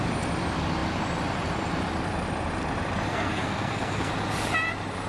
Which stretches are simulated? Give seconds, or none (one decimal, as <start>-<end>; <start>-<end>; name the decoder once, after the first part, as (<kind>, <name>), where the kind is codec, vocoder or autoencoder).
3.1-4.1 (codec, SNAC)